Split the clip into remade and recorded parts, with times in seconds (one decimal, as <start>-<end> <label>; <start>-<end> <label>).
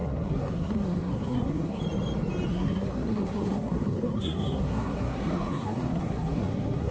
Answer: 0.0-1.8 remade; 1.8-2.5 recorded; 2.5-6.9 remade